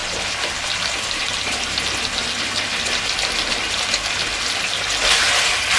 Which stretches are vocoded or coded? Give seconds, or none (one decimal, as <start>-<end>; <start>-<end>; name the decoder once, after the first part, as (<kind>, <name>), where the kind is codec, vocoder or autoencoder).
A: none